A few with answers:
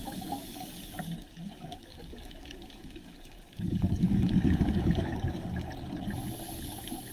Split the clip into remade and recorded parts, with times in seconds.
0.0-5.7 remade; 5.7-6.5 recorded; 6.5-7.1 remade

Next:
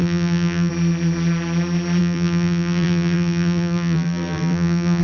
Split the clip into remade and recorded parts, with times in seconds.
0.0-0.7 remade; 0.7-2.0 recorded; 2.0-5.0 remade

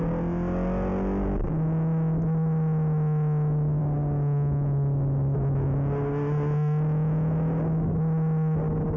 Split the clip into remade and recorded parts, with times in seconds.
0.0-9.0 recorded

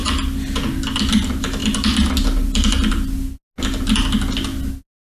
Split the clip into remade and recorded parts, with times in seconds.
0.0-5.1 recorded

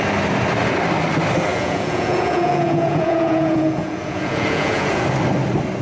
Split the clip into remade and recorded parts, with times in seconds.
0.0-1.5 recorded; 1.5-5.0 remade; 5.0-5.8 recorded